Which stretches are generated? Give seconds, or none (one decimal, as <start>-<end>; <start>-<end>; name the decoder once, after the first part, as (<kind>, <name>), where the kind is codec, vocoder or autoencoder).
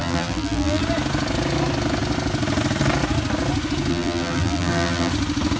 0.0-0.8 (vocoder, BigVGAN v2); 3.9-5.1